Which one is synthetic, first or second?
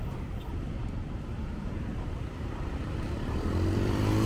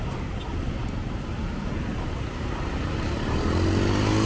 first